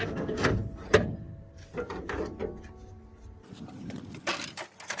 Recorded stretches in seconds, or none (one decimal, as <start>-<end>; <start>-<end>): 0.0-5.0